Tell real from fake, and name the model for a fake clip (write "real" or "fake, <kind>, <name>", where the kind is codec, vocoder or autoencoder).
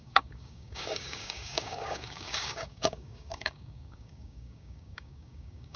fake, codec, DAC